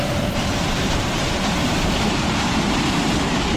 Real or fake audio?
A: fake